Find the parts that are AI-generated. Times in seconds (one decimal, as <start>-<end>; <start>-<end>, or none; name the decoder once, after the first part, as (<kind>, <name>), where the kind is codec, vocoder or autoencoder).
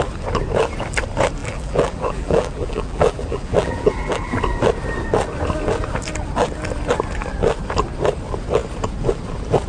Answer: 1.4-4.4 (vocoder, BigVGAN v2)